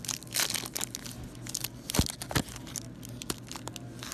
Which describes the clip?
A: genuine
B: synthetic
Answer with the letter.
A